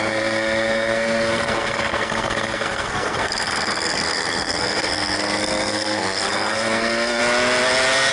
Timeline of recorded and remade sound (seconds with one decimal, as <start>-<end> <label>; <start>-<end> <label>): 0.0-7.2 remade; 7.2-8.1 recorded